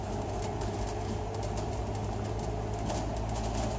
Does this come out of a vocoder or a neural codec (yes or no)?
no